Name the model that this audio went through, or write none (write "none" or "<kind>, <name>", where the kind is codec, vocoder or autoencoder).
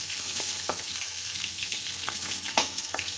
codec, SNAC